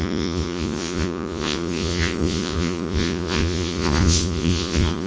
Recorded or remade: remade